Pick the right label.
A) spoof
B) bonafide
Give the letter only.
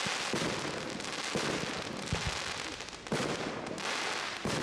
B